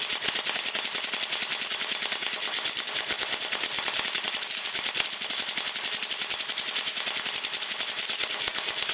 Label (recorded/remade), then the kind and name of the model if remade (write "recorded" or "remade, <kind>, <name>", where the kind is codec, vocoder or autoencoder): recorded